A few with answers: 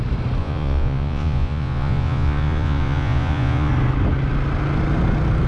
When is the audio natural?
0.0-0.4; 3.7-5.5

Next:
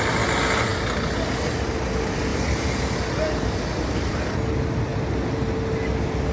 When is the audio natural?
0.0-6.3